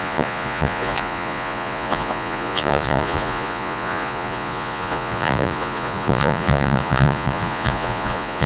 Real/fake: fake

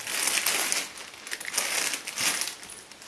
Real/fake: real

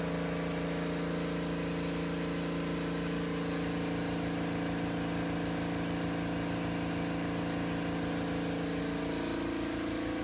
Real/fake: real